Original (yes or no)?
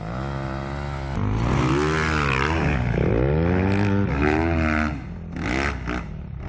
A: yes